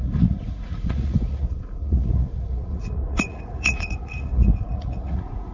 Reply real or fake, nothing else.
fake